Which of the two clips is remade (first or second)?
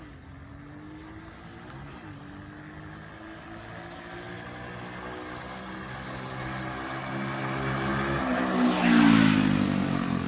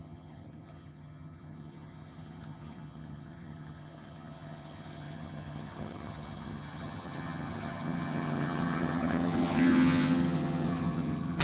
second